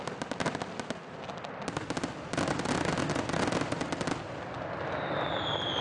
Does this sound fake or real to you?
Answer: real